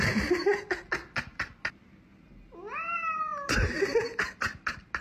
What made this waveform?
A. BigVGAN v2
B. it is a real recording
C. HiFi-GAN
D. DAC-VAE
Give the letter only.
B